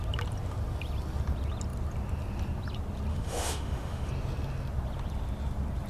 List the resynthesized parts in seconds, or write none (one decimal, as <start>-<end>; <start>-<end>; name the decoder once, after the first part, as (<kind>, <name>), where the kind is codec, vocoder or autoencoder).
3.1-4.1 (autoencoder, DAC-VAE)